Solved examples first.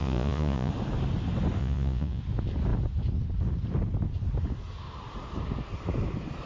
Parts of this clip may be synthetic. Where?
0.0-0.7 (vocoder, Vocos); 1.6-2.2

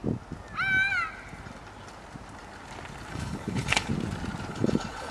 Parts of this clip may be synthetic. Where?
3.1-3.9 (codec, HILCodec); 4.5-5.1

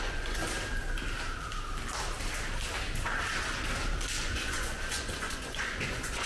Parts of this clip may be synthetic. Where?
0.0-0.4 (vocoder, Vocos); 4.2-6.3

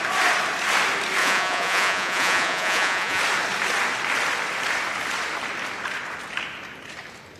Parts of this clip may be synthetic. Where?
1.2-3.2 (vocoder, Vocos)

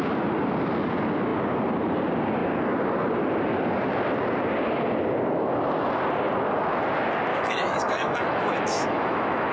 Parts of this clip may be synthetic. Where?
7.3-9.5 (autoencoder, DAC-VAE)

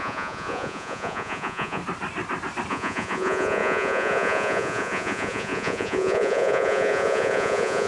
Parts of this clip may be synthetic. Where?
0.0-1.8 (vocoder, Vocos); 2.7-7.9